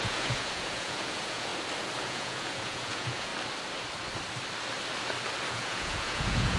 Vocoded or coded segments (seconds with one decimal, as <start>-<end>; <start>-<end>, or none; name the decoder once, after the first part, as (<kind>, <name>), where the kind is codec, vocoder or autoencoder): 0.0-1.5 (vocoder, Vocos); 2.0-3.3; 5.5-6.6